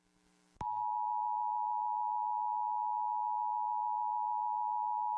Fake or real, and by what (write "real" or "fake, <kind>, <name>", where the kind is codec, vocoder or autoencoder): real